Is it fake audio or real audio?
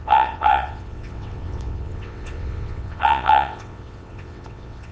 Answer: fake